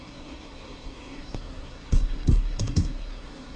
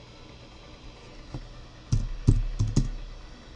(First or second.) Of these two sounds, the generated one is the first